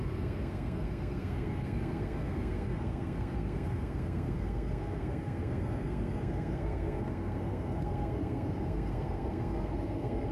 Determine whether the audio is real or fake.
fake